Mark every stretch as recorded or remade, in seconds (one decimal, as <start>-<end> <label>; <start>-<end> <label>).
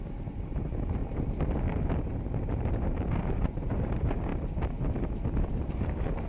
0.0-1.0 remade; 1.0-2.0 recorded; 2.0-4.3 remade; 4.3-5.5 recorded; 5.5-6.3 remade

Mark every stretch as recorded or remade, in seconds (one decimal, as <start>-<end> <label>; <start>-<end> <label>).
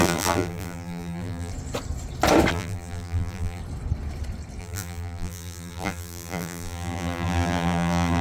0.0-1.5 remade; 1.5-2.5 recorded; 2.5-3.6 remade; 3.6-4.6 recorded; 4.6-8.2 remade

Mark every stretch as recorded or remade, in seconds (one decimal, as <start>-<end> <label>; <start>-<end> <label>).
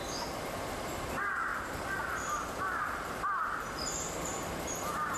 0.0-0.6 recorded; 0.6-5.2 remade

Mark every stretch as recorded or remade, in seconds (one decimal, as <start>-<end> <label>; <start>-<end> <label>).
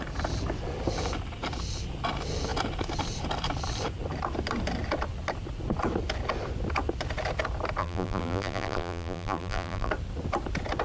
0.0-7.8 recorded; 7.8-9.9 remade; 9.9-10.8 recorded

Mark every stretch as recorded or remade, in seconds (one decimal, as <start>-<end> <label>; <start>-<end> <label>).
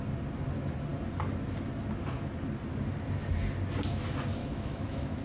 0.0-4.4 recorded; 4.4-5.2 remade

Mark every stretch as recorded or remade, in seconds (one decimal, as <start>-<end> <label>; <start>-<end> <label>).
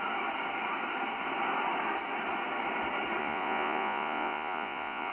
0.0-3.2 recorded; 3.2-5.1 remade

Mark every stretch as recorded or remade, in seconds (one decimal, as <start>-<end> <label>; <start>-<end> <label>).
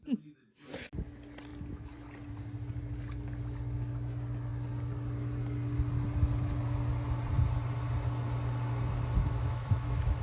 0.0-9.2 recorded; 9.2-10.2 remade